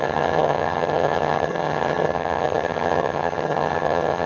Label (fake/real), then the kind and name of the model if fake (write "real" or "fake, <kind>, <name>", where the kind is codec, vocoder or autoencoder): fake, vocoder, HiFi-GAN